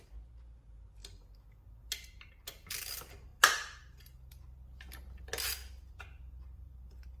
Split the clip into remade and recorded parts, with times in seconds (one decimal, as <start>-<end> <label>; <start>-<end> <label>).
0.0-7.2 recorded